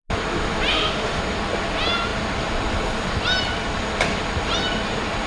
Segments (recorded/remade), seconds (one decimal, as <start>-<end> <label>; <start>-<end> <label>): 0.0-0.7 recorded; 0.7-1.2 remade; 1.2-5.3 recorded